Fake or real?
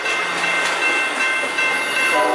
real